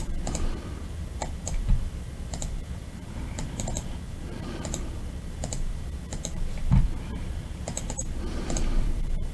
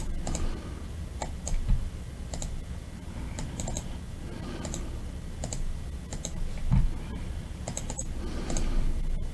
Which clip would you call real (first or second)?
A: second